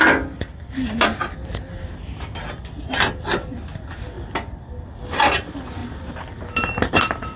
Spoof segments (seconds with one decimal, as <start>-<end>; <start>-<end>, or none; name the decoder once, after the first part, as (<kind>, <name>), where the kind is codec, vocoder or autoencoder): none